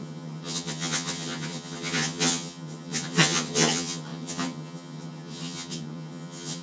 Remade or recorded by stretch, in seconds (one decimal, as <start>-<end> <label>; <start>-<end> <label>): 0.0-6.6 remade